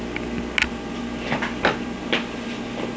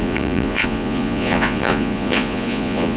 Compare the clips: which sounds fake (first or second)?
second